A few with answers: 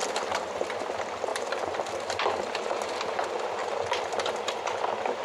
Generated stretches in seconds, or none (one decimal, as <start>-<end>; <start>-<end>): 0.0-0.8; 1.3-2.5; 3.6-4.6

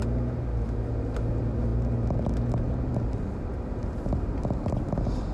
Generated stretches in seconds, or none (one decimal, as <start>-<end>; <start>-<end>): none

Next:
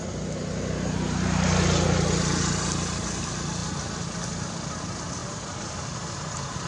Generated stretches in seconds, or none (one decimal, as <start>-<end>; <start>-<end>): 5.2-6.7